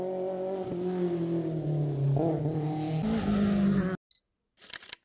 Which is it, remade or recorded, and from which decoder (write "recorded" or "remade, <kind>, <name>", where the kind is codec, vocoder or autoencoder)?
recorded